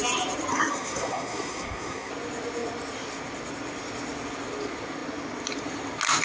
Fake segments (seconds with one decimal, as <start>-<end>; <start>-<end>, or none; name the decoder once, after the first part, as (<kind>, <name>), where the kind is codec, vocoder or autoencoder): 0.5-2.1 (codec, SNAC)